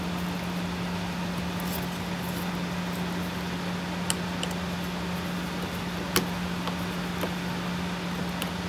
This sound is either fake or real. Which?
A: real